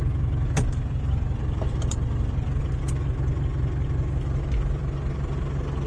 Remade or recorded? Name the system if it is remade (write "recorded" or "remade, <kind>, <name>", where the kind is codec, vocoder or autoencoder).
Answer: recorded